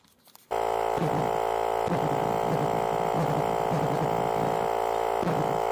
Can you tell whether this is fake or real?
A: fake